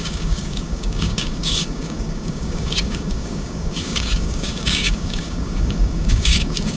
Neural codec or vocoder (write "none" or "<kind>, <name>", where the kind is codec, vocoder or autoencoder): codec, DAC